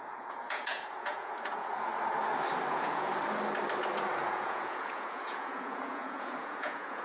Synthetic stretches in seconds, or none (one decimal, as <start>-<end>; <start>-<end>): 0.0-1.9; 2.7-3.1; 4.2-7.0